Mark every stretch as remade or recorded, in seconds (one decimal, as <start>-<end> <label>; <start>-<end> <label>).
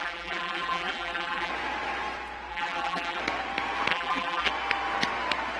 0.0-1.5 remade; 1.5-2.5 recorded; 2.5-3.2 remade; 3.2-3.9 recorded; 3.9-4.5 remade; 4.5-5.6 recorded